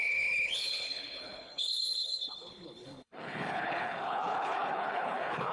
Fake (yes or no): yes